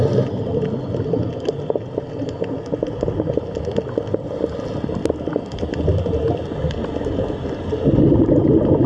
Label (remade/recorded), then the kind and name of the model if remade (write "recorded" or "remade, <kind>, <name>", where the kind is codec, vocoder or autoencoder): recorded